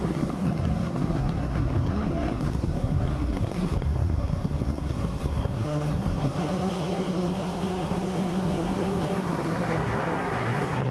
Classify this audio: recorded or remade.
remade